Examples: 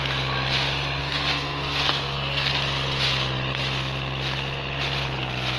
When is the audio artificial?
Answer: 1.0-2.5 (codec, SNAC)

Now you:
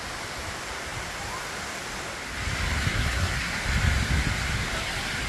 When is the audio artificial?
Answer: 2.8-3.5 (codec, SNAC)